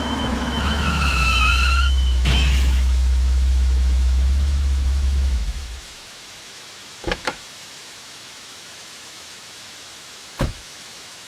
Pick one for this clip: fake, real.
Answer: fake